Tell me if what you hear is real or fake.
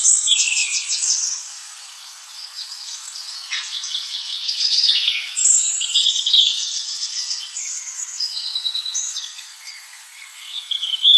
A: fake